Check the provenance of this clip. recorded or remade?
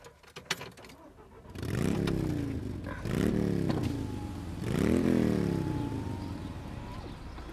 recorded